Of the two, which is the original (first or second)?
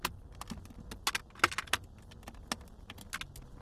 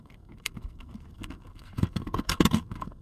first